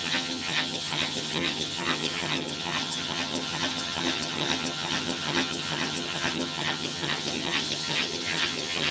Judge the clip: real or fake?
fake